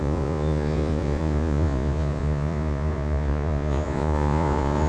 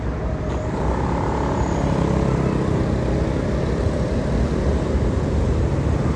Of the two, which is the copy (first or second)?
first